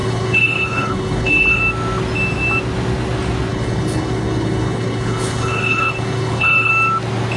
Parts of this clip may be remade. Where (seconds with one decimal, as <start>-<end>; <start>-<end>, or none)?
0.0-1.6; 3.5-6.7